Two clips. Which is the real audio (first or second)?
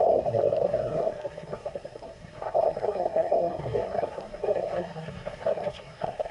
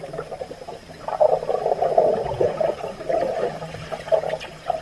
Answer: second